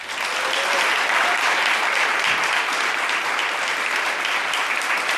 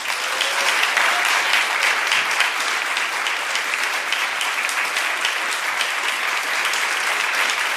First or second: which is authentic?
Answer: second